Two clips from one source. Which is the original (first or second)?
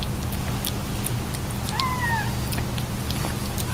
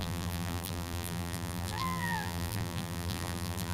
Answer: first